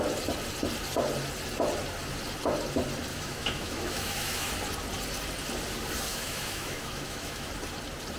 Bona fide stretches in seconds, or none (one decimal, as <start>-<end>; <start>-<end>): 0.0-3.1; 4.5-6.1; 7.5-8.2